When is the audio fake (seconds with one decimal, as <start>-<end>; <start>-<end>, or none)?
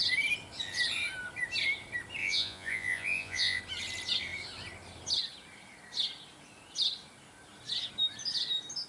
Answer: 2.2-3.6